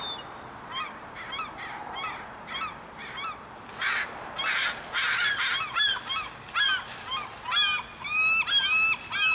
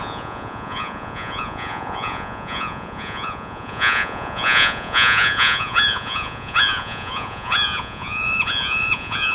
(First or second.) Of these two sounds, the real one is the first